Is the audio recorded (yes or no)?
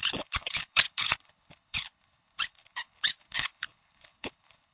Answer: no